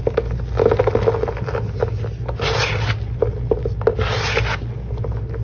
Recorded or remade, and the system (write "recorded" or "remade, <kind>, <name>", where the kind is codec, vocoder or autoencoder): recorded